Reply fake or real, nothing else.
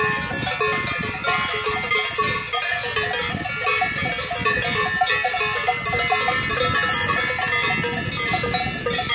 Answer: real